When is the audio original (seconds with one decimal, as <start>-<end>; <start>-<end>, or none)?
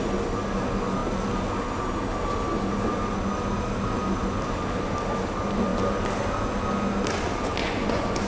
0.0-7.6